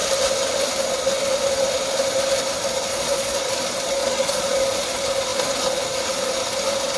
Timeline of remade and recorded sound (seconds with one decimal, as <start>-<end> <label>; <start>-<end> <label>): 0.0-2.9 recorded; 2.9-3.5 remade; 3.5-4.0 recorded; 4.0-4.6 remade; 4.6-7.0 recorded